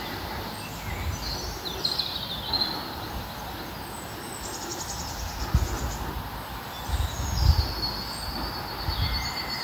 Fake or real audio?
real